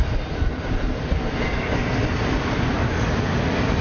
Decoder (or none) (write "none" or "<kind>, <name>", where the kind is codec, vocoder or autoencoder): none